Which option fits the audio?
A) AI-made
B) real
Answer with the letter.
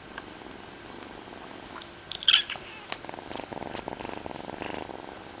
B